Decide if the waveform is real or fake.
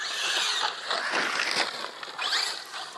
real